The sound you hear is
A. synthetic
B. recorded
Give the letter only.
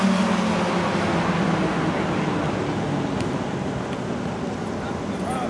B